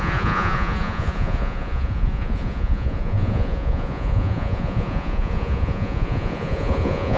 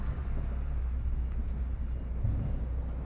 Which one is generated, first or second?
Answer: first